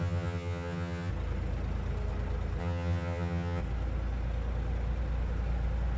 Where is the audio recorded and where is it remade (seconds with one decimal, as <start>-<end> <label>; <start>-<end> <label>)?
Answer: 0.0-1.1 remade; 1.1-2.6 recorded; 2.6-3.6 remade; 3.6-6.0 recorded